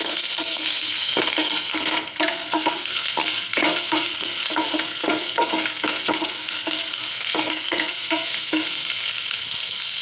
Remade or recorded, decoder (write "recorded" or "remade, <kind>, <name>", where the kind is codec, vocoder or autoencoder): remade, codec, SNAC